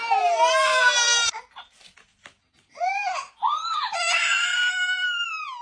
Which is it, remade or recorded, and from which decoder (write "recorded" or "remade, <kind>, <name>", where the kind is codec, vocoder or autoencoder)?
recorded